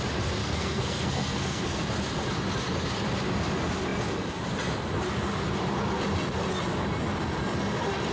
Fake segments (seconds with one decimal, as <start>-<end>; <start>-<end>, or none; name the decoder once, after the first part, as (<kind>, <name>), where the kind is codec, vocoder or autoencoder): 0.4-1.8 (codec, SNAC)